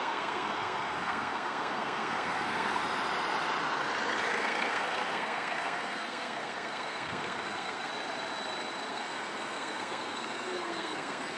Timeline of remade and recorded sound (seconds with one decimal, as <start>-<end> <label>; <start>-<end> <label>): 0.0-2.8 remade; 2.8-4.3 recorded; 4.3-7.9 remade; 7.9-8.9 recorded; 8.9-11.4 remade